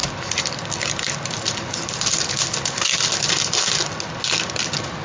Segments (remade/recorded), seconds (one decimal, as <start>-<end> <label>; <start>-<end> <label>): 0.0-2.4 remade; 2.4-5.0 recorded